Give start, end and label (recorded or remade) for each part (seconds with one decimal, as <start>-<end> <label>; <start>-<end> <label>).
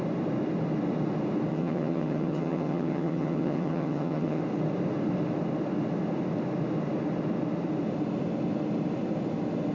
0.0-1.5 recorded; 1.5-4.4 remade; 4.4-9.7 recorded